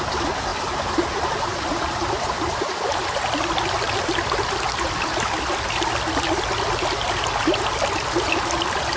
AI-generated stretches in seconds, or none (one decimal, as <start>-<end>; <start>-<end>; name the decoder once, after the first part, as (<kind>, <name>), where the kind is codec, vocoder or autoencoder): none